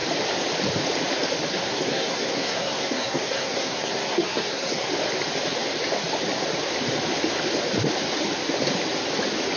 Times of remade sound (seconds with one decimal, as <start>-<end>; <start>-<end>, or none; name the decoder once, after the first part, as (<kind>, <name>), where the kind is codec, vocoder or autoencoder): 1.5-4.9 (codec, SNAC)

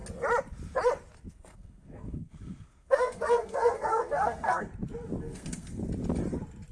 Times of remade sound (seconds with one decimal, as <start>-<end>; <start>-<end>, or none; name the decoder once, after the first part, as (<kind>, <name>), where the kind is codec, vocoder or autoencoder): 1.3-4.7 (codec, SNAC); 5.2-5.8

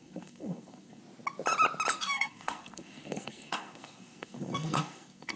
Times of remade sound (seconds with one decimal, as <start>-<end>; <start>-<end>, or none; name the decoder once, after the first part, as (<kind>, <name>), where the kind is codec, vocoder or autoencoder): 0.0-1.0 (codec, SNAC); 1.9-5.4

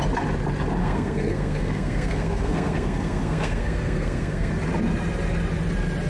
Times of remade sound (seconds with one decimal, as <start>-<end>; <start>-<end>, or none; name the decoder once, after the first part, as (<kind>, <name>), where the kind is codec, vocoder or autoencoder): 0.8-4.5 (codec, SNAC)

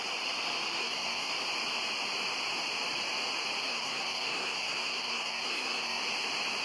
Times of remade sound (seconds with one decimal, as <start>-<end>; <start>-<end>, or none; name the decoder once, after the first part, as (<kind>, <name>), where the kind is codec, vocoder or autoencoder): 0.8-1.3 (codec, SNAC); 3.6-6.0

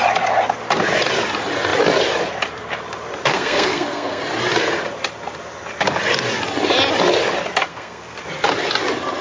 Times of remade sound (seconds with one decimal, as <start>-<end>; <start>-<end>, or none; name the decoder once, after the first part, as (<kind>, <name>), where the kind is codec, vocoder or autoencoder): 3.3-4.2 (codec, SNAC); 7.7-8.2